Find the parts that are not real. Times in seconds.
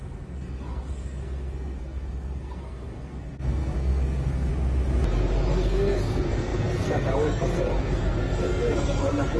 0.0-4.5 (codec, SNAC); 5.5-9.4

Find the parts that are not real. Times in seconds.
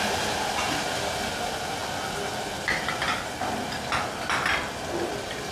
none